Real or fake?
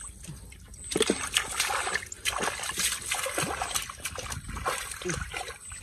real